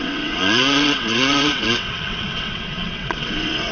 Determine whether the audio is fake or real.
fake